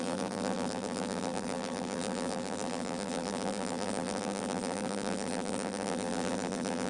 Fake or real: fake